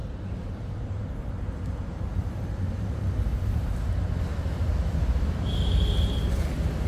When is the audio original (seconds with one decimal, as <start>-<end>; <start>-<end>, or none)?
0.0-0.4; 1.6-2.1; 3.7-4.3; 6.4-6.9